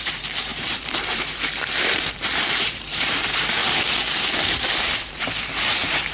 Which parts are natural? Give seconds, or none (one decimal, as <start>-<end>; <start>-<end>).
3.6-5.2